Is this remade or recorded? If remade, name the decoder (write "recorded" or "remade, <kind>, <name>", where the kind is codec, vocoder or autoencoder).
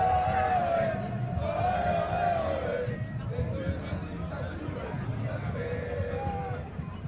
remade, vocoder, BigVGAN v2